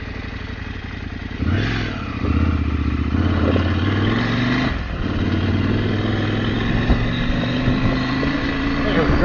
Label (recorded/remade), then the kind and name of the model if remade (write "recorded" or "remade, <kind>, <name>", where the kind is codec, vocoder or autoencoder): recorded